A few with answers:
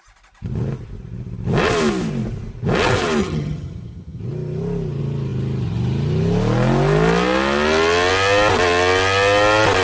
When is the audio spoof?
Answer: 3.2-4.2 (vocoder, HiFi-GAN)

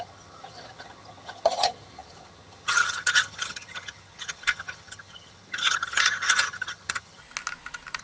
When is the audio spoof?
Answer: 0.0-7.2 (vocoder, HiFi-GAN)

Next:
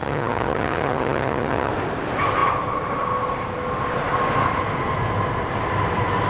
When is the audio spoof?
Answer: 0.0-1.7 (vocoder, HiFi-GAN)

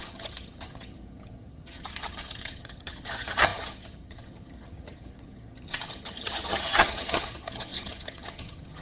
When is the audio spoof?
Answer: 0.0-8.8 (vocoder, HiFi-GAN)

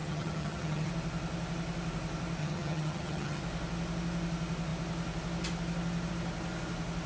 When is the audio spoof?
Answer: 0.0-0.9 (vocoder, HiFi-GAN); 2.4-3.4

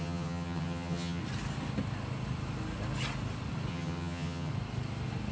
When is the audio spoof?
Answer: 0.0-1.2 (vocoder, HiFi-GAN); 3.7-4.5

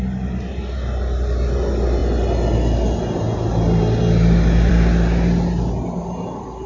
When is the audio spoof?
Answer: none

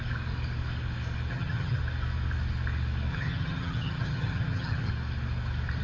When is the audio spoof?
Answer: 1.3-1.8 (vocoder, HiFi-GAN); 3.1-4.9